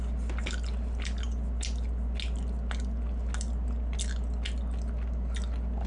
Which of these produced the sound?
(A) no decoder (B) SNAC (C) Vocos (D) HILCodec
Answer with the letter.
A